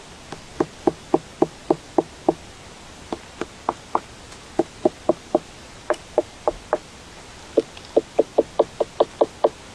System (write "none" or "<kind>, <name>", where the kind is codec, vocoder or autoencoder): none